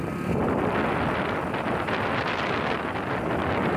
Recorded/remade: recorded